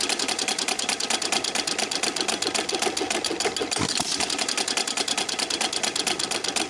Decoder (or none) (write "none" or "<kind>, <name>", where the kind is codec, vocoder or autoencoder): none